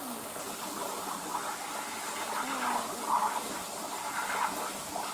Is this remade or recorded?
recorded